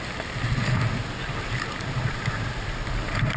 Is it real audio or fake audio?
real